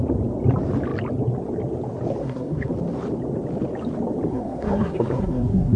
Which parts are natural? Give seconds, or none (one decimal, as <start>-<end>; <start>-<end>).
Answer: 0.0-2.2; 2.7-4.3